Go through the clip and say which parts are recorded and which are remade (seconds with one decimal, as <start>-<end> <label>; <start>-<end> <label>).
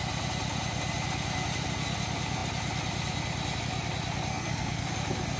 0.0-4.3 recorded; 4.3-4.9 remade; 4.9-5.4 recorded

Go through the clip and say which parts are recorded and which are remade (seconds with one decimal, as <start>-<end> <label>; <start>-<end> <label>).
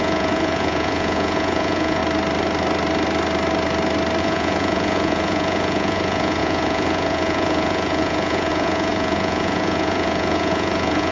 0.0-2.0 remade; 2.0-4.2 recorded; 4.2-11.1 remade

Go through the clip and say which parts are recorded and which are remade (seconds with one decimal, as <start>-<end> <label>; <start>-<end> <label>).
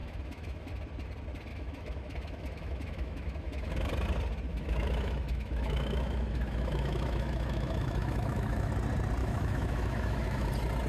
0.0-0.7 remade; 0.7-1.5 recorded; 1.5-3.9 remade; 3.9-4.5 recorded; 4.5-8.7 remade; 8.7-9.2 recorded; 9.2-10.5 remade; 10.5-10.9 recorded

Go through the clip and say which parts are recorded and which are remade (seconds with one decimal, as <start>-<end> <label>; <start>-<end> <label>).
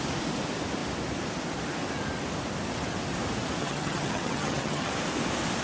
0.0-3.6 recorded; 3.6-4.9 remade; 4.9-5.6 recorded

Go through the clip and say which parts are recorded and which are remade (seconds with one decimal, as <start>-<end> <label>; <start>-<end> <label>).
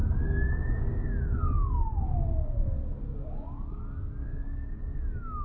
0.0-3.2 recorded; 3.2-5.4 remade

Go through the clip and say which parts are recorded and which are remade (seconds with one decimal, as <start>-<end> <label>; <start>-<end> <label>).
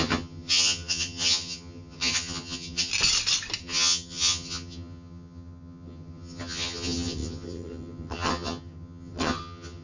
0.0-2.9 remade; 2.9-3.6 recorded; 3.6-9.8 remade